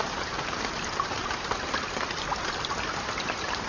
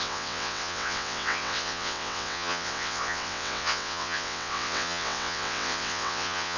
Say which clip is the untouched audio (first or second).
first